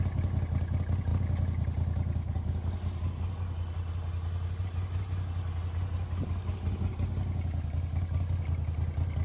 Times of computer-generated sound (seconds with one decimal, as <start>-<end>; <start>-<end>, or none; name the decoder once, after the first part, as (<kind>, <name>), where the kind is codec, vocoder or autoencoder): none